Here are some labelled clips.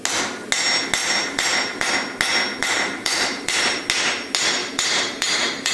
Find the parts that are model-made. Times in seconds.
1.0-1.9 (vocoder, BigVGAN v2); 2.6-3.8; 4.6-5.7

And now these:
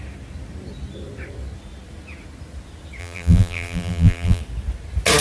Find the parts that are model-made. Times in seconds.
3.0-4.4 (vocoder, BigVGAN v2)

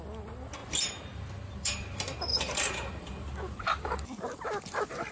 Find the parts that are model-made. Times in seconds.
2.3-5.1 (vocoder, BigVGAN v2)